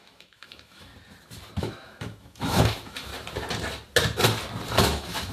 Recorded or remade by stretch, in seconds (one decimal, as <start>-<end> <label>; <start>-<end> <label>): 0.0-0.9 remade; 0.9-1.6 recorded; 1.6-3.1 remade; 3.1-4.7 recorded; 4.7-5.3 remade